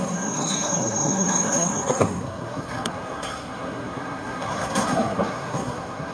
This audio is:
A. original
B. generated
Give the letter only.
B